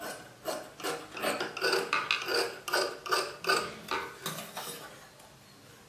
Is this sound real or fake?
real